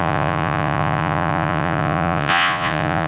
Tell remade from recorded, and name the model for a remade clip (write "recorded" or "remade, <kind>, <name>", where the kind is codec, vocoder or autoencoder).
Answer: remade, vocoder, Vocos